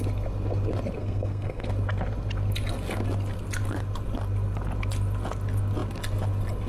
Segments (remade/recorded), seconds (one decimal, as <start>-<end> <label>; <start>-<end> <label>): 0.0-1.0 recorded; 1.0-1.7 remade; 1.7-6.7 recorded